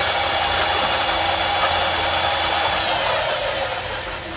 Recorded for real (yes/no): yes